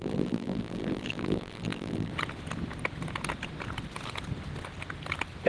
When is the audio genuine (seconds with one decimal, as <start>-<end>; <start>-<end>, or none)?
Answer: 2.1-5.5